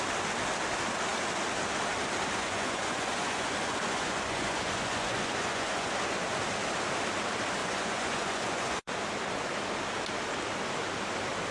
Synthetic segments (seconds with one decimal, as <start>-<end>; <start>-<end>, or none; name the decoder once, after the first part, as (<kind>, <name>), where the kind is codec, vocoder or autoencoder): 2.4-5.9 (vocoder, Vocos); 7.6-8.9

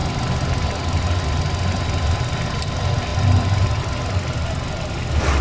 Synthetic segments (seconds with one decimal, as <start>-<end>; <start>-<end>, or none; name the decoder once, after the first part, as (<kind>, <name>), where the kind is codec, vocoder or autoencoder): none

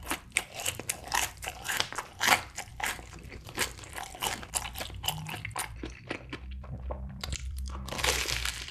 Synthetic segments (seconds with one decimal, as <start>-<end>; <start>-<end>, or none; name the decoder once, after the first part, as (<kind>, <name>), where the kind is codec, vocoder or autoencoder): 0.0-8.7 (vocoder, BigVGAN v2)

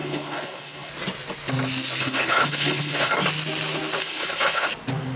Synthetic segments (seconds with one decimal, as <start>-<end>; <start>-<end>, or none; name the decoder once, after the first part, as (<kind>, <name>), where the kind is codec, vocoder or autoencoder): 0.0-0.9 (codec, HILCodec); 2.0-3.1; 4.0-4.7